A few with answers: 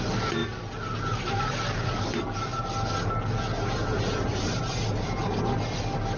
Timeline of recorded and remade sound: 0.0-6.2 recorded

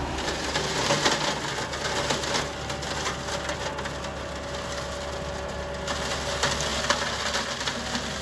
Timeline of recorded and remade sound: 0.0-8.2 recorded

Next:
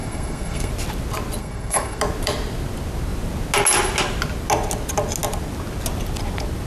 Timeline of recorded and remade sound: 0.0-0.7 remade; 0.7-1.4 recorded; 1.4-2.0 remade; 2.0-6.7 recorded

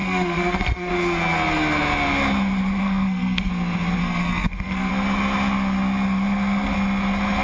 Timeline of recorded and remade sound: 0.0-0.9 remade; 0.9-2.8 recorded; 2.8-3.5 remade; 3.5-4.0 recorded; 4.0-4.9 remade; 4.9-7.4 recorded